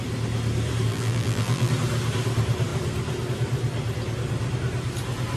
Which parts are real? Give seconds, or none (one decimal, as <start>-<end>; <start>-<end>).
0.0-0.9; 1.7-5.4